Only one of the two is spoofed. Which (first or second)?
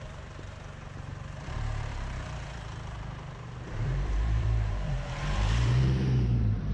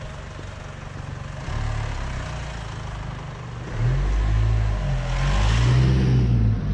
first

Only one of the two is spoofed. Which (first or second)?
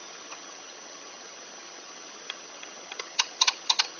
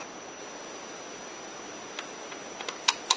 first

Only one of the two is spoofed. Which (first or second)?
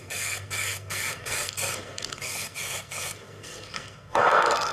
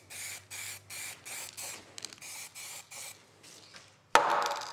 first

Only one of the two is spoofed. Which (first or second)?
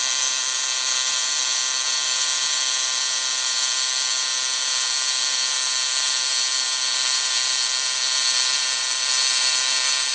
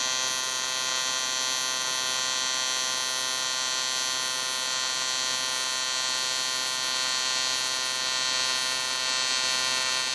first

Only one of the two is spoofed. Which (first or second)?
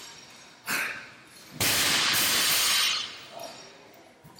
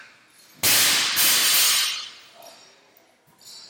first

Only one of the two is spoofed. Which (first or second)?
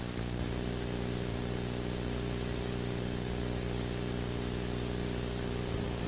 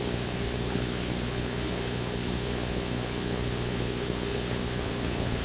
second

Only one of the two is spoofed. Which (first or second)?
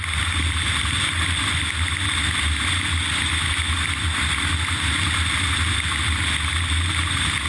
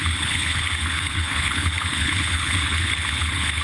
second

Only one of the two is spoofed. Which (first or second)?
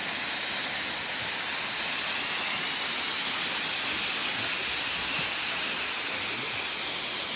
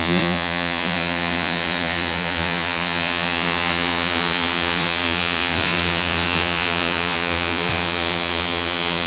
second